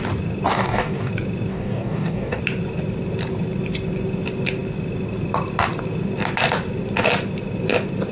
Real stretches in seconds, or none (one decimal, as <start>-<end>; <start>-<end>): 0.0-0.5; 1.1-1.5; 2.4-8.1